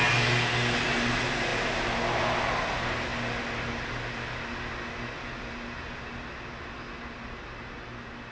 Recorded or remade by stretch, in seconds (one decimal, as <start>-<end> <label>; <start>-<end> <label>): 0.0-1.5 recorded; 1.5-2.0 remade; 2.0-8.3 recorded